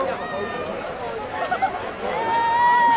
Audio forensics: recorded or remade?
recorded